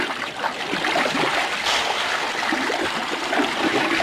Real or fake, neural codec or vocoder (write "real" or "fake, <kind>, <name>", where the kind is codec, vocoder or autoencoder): fake, vocoder, BigVGAN v2